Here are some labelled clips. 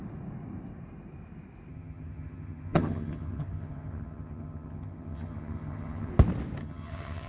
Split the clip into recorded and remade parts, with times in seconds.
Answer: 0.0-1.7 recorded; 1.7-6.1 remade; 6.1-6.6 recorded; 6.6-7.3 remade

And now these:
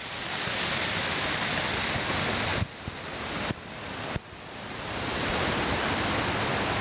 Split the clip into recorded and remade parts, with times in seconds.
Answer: 0.0-2.5 recorded; 2.5-3.6 remade; 3.6-5.1 recorded; 5.1-5.6 remade; 5.6-6.8 recorded

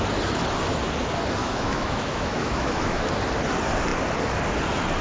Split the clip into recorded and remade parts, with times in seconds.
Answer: 0.0-1.4 recorded; 1.4-3.1 remade; 3.1-5.0 recorded

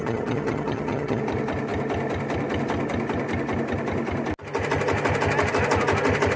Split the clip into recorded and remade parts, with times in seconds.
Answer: 0.0-1.2 remade; 1.2-6.4 recorded

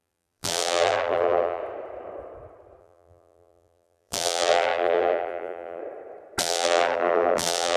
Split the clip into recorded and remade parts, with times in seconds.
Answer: 0.0-1.6 remade; 1.6-2.8 recorded; 2.8-5.8 remade; 5.8-6.4 recorded; 6.4-7.8 remade